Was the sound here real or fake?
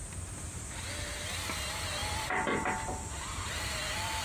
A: real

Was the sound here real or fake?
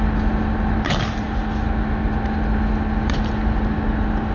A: real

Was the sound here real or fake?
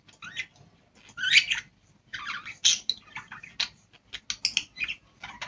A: real